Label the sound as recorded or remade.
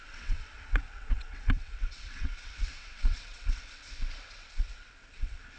remade